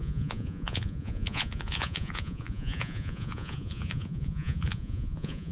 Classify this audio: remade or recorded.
remade